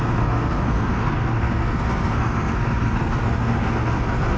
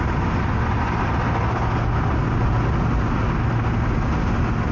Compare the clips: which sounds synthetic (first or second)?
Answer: first